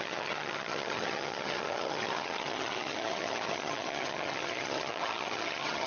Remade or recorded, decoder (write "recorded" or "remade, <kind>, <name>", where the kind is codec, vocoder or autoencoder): remade, vocoder, HiFi-GAN